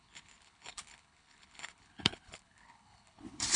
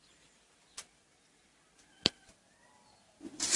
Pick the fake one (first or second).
first